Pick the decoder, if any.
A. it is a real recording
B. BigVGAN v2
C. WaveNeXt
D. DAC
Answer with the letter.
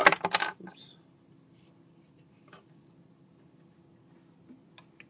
A